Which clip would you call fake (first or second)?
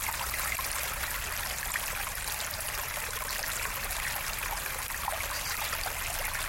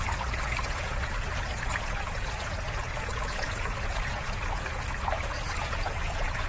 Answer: second